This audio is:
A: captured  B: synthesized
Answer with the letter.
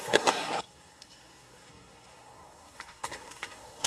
B